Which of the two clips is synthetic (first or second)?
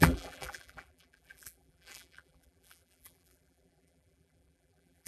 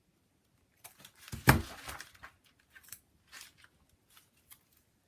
first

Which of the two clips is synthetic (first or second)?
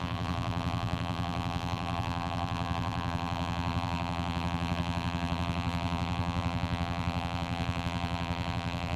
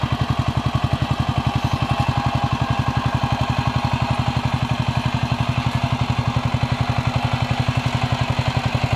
first